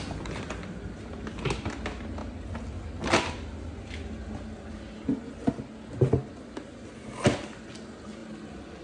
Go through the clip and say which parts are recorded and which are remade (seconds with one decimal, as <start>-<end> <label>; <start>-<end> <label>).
0.0-8.8 recorded